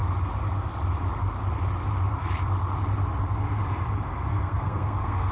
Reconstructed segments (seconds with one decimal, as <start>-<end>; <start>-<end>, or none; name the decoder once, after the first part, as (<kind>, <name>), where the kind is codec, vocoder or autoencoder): 4.3-5.3 (codec, SNAC)